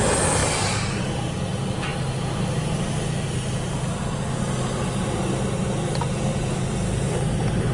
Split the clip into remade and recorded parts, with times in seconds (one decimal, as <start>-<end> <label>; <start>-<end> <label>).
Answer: 0.0-0.4 recorded; 0.4-1.4 remade; 1.4-7.7 recorded